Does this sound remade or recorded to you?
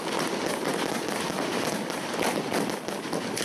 recorded